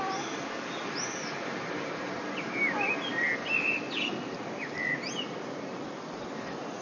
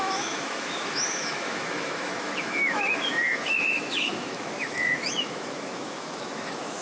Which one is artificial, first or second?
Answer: second